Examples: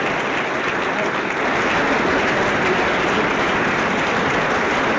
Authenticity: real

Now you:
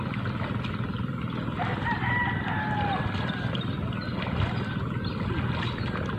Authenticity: real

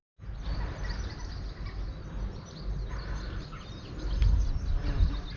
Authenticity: real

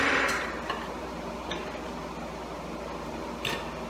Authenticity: real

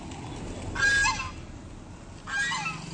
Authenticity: real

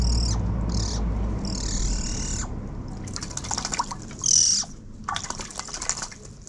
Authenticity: real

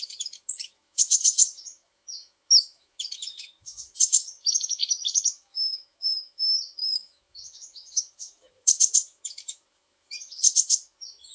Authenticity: fake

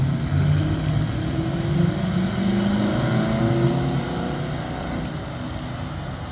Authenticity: real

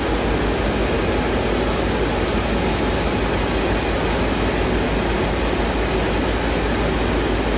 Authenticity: real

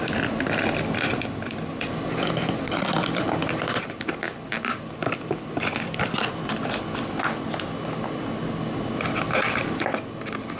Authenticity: real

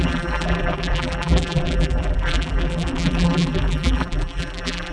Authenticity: fake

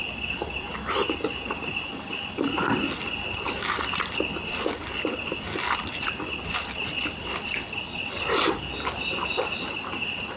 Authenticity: real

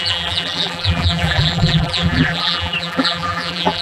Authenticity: fake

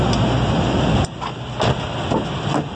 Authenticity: real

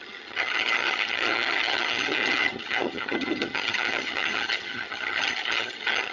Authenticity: fake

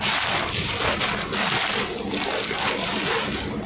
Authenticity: fake